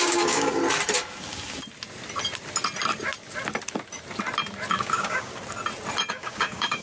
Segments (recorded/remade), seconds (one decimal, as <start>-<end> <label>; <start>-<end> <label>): 0.0-0.6 remade; 0.6-4.7 recorded; 4.7-5.3 remade; 5.3-6.1 recorded; 6.1-6.8 remade